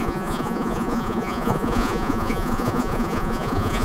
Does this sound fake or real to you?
fake